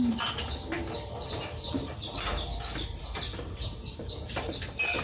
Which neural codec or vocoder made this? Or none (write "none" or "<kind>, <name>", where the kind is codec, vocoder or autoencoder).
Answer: vocoder, BigVGAN v2